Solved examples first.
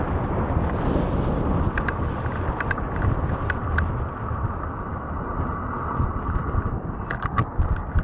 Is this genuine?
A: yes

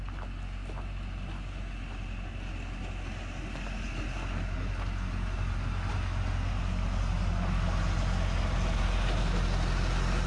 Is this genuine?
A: yes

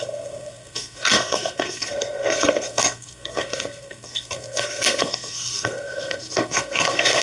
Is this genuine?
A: no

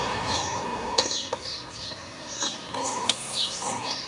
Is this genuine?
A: no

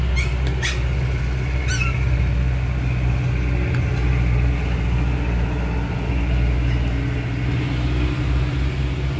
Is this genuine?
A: yes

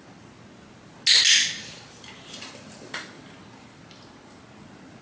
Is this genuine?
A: yes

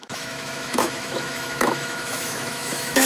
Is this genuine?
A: no